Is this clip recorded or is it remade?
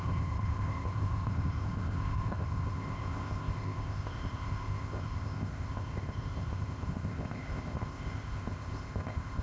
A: remade